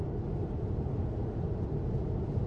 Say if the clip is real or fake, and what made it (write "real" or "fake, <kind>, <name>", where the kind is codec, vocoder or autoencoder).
real